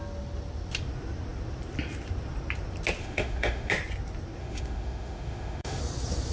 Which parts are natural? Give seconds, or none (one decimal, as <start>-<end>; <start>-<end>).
0.0-3.0; 3.7-4.4; 5.8-6.3